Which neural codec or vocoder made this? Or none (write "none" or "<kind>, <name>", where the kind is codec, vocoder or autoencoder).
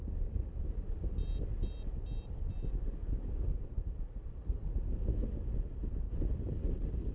none